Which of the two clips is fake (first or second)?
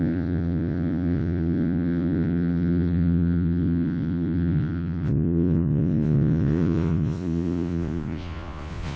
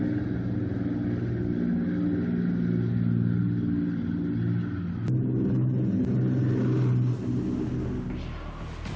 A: first